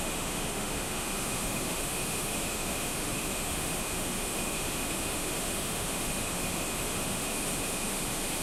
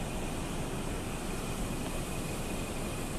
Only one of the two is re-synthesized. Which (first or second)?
first